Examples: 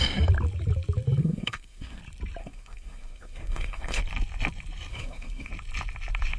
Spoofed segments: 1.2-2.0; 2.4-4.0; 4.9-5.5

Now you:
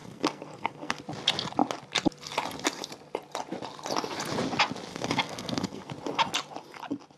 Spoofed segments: 0.0-1.0; 4.9-5.9

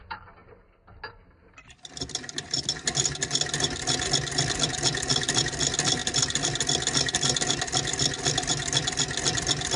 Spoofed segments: none

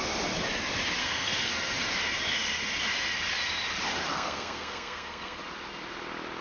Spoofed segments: 1.0-1.5; 4.1-5.4